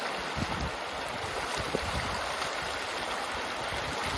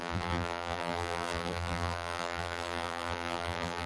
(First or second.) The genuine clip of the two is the first